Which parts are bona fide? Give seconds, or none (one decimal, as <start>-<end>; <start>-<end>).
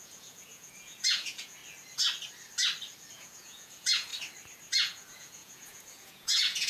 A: 1.6-3.1; 4.1-4.7